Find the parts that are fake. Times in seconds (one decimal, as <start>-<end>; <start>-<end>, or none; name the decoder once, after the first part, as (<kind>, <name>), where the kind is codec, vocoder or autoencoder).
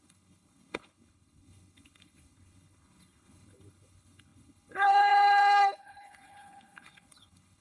0.0-7.6 (codec, HILCodec)